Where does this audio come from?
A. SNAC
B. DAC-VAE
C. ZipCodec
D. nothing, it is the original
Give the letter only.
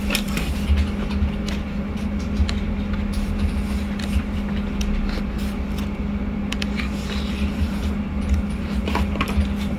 D